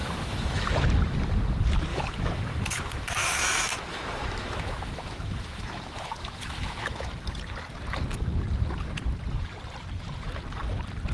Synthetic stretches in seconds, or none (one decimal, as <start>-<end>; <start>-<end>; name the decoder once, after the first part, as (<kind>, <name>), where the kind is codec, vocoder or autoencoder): 0.0-0.7 (autoencoder, DAC-VAE); 1.9-7.1